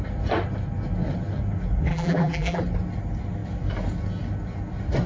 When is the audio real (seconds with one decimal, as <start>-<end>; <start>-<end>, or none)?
0.0-1.9; 2.6-5.1